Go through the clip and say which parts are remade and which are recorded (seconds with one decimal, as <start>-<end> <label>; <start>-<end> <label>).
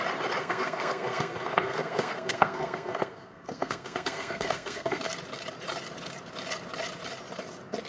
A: 0.0-0.4 recorded; 0.4-5.1 remade; 5.1-7.9 recorded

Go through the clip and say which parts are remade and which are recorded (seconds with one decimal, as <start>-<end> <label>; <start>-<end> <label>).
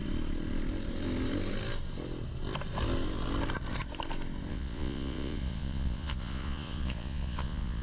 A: 0.0-4.5 recorded; 4.5-7.8 remade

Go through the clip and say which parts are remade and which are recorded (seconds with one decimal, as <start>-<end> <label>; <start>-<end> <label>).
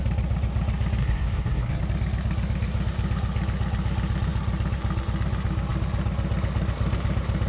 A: 0.0-1.0 recorded; 1.0-1.8 remade; 1.8-7.5 recorded